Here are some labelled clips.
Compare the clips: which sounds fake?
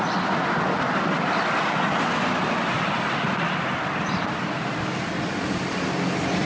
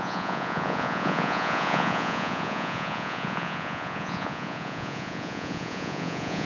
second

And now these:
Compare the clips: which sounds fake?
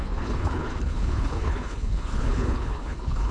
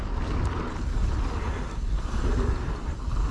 first